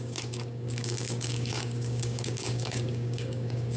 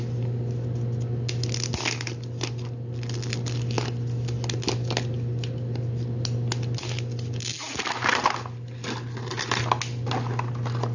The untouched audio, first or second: second